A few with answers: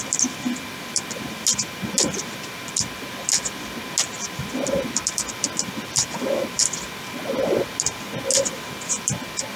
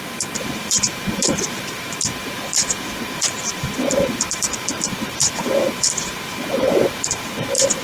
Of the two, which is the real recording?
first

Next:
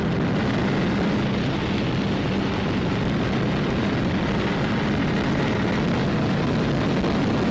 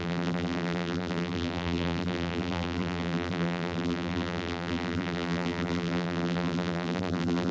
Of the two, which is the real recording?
first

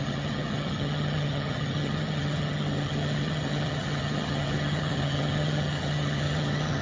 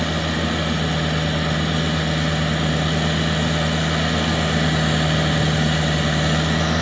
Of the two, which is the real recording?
second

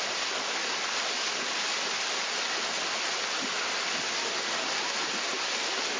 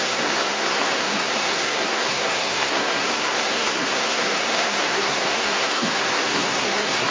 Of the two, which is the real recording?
first